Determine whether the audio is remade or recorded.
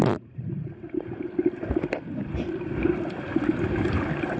recorded